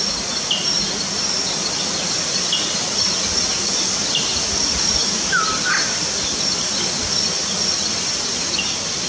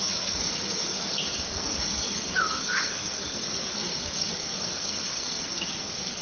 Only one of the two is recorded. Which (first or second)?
first